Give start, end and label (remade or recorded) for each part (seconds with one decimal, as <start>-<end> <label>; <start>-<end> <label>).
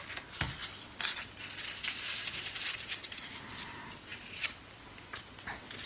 0.0-5.9 recorded